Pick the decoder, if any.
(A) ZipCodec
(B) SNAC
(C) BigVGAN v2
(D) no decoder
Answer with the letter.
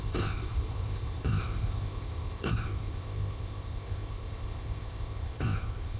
A